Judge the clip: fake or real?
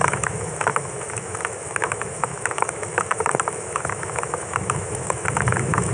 fake